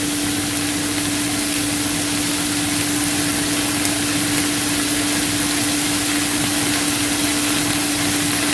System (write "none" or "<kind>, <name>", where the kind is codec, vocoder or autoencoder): none